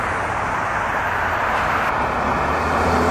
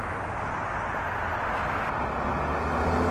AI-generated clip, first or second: first